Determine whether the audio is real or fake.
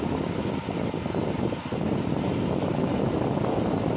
real